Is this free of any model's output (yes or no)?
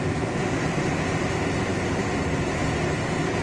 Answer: yes